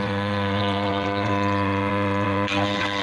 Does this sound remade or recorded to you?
remade